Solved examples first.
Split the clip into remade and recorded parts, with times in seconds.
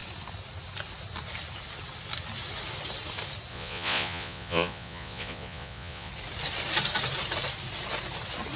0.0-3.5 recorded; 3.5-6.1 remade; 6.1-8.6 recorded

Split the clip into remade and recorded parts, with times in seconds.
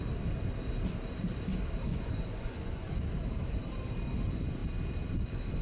0.0-1.9 recorded; 1.9-2.9 remade; 2.9-5.6 recorded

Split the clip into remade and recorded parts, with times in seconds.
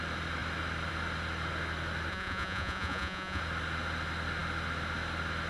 0.0-2.1 recorded; 2.1-3.4 remade; 3.4-5.5 recorded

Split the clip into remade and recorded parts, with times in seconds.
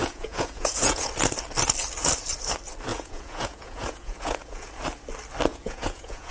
0.0-1.1 remade; 1.1-2.9 recorded; 2.9-4.7 remade; 4.7-5.5 recorded; 5.5-6.3 remade